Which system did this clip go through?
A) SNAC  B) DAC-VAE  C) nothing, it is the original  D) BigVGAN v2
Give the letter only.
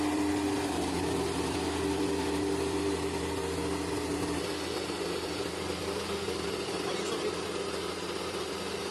C